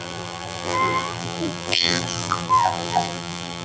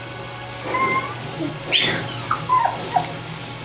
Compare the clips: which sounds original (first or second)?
second